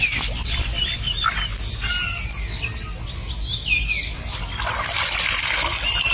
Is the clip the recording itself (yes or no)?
yes